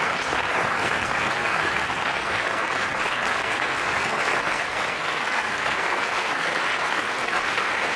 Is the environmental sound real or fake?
fake